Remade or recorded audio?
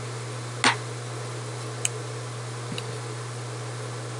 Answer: recorded